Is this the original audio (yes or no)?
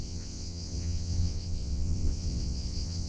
no